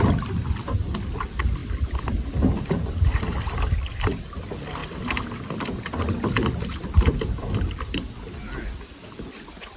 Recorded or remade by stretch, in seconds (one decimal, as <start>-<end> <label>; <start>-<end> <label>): 0.0-9.8 recorded